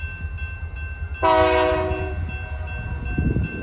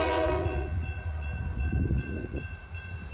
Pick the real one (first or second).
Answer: first